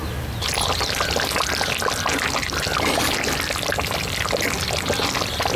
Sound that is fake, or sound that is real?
real